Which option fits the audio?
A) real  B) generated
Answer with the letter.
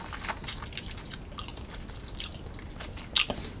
A